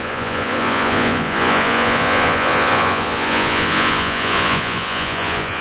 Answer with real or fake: fake